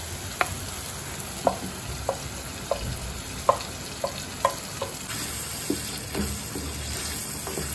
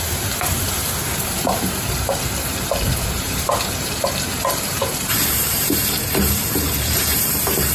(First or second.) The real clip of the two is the first